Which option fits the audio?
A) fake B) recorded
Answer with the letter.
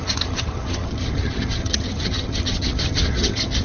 A